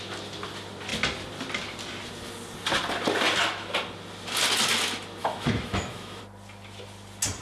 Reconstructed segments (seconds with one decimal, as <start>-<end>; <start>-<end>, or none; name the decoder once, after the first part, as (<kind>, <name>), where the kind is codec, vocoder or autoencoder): 5.2-6.2 (autoencoder, DAC-VAE)